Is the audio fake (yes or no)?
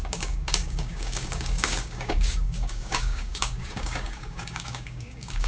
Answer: yes